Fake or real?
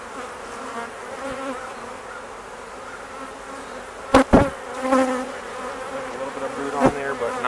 real